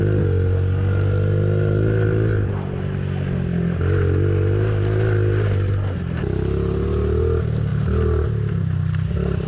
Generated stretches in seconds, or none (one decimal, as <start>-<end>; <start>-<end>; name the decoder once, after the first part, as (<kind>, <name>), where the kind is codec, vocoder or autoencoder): none